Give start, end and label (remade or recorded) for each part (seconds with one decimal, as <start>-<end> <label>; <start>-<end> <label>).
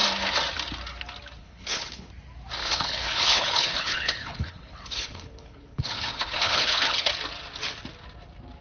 0.0-1.4 recorded; 1.4-2.1 remade; 2.1-2.6 recorded; 2.6-7.1 remade; 7.1-8.6 recorded